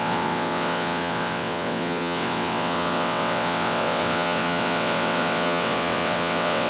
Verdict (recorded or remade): remade